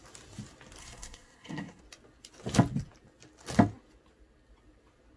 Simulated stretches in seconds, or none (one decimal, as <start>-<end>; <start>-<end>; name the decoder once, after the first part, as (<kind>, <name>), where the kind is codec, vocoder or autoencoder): 0.8-1.8 (codec, SNAC)